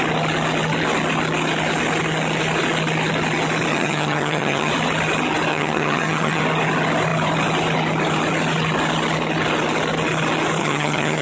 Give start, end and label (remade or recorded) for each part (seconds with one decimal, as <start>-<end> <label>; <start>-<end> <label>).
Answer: 0.0-3.7 recorded; 3.7-4.7 remade; 4.7-5.5 recorded; 5.5-6.4 remade; 6.4-10.6 recorded; 10.6-11.2 remade